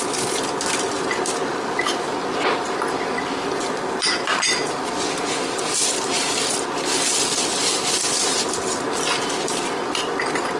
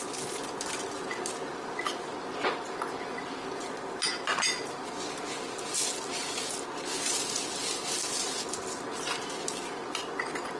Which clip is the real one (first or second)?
second